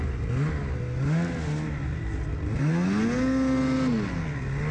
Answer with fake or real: real